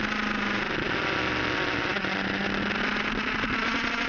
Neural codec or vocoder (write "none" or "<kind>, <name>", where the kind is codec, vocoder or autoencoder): none